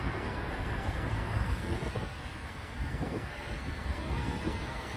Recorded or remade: remade